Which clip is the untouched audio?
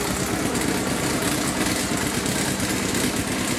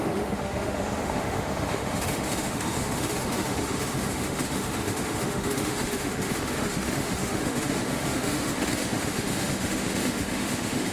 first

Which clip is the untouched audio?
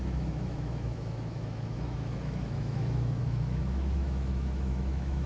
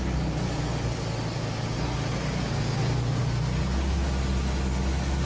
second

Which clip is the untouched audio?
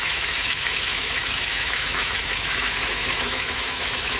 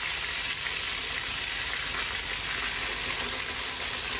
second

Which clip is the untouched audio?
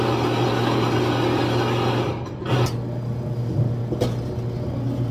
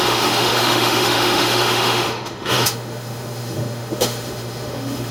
first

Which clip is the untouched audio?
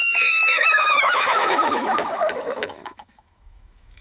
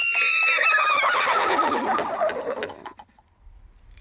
second